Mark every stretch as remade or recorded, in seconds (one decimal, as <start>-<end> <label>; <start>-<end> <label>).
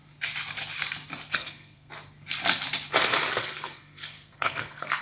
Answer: 0.0-1.3 recorded; 1.3-1.9 remade; 1.9-3.4 recorded; 3.4-5.0 remade